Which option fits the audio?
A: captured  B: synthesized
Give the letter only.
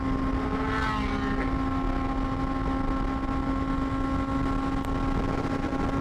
A